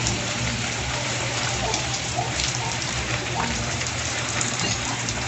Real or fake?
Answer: fake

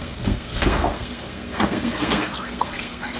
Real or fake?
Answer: fake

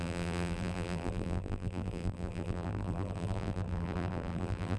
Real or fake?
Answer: fake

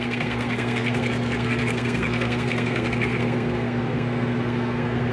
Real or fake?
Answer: fake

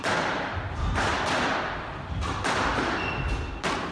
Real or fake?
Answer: real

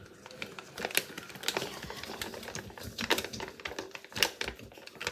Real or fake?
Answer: real